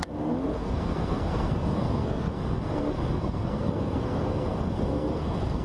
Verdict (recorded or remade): remade